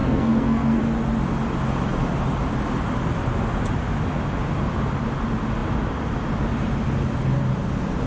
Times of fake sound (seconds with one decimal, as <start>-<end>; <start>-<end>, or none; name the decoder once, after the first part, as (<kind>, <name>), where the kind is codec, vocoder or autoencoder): 0.0-0.8 (codec, SNAC)